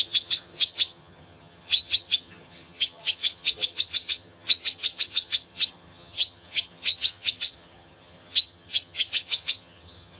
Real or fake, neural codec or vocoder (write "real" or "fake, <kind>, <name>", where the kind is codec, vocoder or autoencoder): fake, vocoder, HiFi-GAN